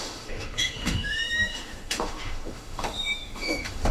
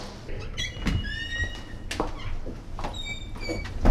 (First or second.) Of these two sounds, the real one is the second